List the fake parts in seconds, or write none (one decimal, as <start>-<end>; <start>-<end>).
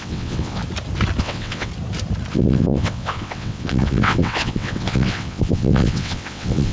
0.0-0.6; 1.2-1.7; 2.3-6.7